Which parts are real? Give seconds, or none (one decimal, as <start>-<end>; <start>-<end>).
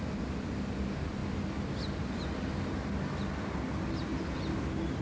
0.0-5.0